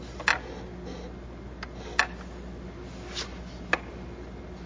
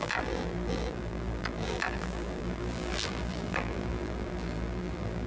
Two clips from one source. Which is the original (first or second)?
first